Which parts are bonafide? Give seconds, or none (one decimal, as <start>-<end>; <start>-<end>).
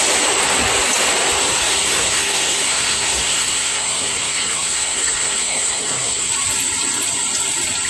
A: 0.0-1.6; 6.3-7.9